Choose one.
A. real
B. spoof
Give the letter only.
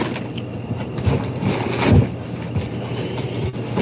A